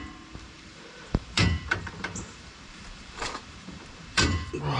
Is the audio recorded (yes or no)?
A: no